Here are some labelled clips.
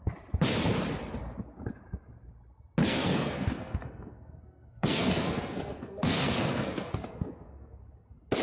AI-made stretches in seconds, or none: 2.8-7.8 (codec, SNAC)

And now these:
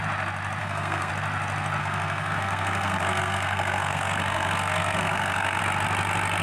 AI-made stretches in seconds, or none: 0.6-1.1 (codec, SNAC); 1.8-5.6

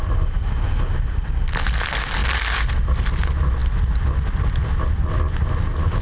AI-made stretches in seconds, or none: none

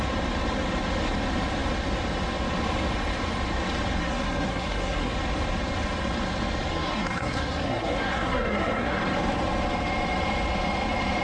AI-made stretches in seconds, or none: 4.0-5.1 (codec, SNAC); 6.7-8.9

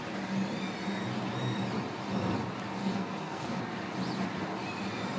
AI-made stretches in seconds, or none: 2.8-3.6 (codec, SNAC)

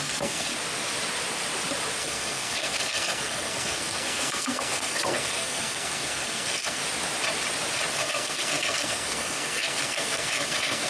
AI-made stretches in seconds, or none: 0.0-0.5 (codec, SNAC); 2.0-6.8; 7.9-10.9

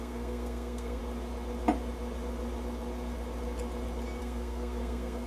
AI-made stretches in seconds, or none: 0.0-1.0 (codec, SNAC); 4.2-5.3